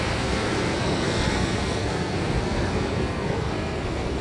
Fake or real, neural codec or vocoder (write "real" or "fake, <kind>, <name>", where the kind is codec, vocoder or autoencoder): fake, codec, SNAC